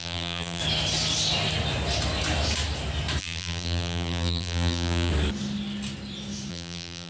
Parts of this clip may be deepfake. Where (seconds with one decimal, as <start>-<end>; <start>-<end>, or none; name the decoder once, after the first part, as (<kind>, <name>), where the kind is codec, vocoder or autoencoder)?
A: 0.0-0.6 (vocoder, BigVGAN v2); 3.2-5.1; 6.5-7.1